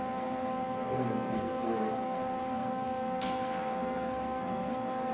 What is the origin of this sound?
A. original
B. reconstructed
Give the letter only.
B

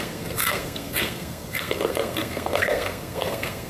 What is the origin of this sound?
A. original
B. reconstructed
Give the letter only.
B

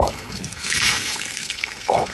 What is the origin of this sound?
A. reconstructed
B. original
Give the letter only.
A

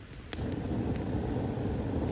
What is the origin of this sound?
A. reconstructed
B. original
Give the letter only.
B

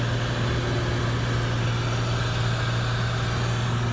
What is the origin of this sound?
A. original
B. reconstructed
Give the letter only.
A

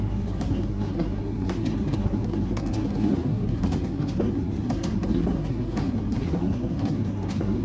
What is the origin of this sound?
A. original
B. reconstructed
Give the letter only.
B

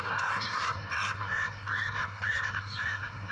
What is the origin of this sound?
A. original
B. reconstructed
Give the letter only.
B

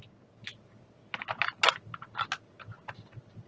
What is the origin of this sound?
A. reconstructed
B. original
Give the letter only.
B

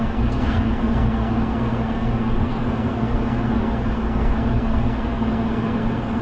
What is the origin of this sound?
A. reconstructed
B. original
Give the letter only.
A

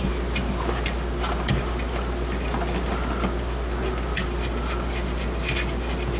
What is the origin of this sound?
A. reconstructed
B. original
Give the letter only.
B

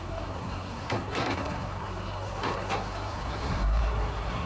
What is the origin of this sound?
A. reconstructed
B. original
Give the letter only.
A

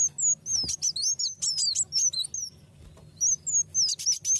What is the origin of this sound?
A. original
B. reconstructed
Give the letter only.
A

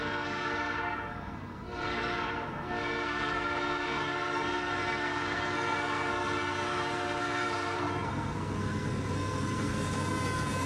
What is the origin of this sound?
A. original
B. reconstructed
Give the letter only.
B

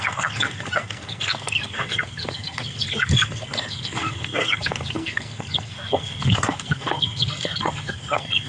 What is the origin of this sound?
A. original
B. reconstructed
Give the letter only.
B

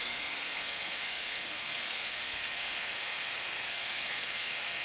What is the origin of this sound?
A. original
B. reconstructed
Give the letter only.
B